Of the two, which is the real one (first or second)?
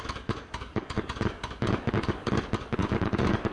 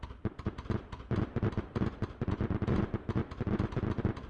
second